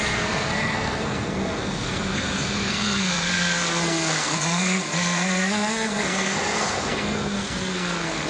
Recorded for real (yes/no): no